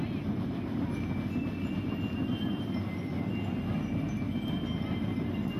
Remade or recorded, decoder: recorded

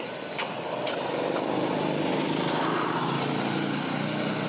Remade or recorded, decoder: recorded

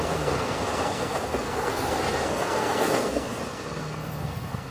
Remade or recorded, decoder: remade, codec, SNAC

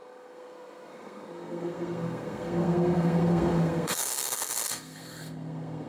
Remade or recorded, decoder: remade, codec, SNAC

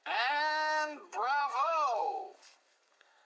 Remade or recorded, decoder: remade, codec, SNAC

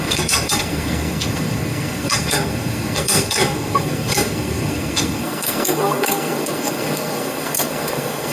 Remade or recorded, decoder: remade, codec, SNAC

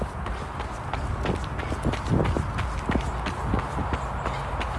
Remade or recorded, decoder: recorded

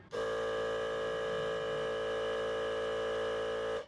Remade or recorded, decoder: recorded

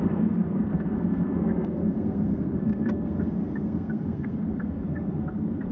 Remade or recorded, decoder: remade, codec, SNAC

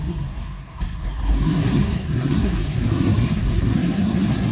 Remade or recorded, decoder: remade, codec, SNAC